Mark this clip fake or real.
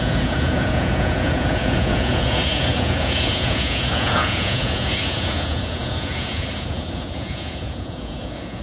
fake